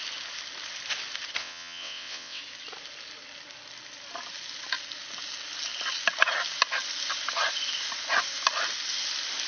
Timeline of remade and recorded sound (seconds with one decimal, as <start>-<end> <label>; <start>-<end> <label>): 0.0-1.4 recorded; 1.4-2.4 remade; 2.4-9.5 recorded